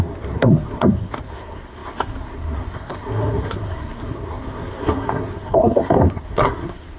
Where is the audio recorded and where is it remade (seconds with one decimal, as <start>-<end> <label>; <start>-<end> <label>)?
0.0-7.0 remade